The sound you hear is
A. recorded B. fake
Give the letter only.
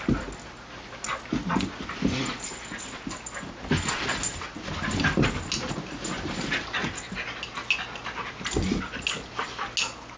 A